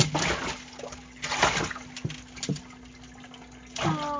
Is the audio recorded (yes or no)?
yes